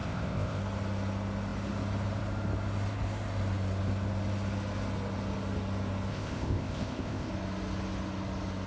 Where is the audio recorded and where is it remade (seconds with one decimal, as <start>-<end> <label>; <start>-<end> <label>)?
0.0-0.6 remade; 0.6-6.1 recorded; 6.1-7.3 remade; 7.3-8.7 recorded